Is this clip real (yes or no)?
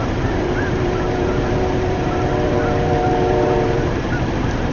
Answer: no